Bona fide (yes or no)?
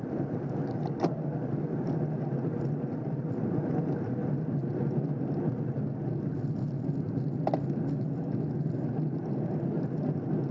yes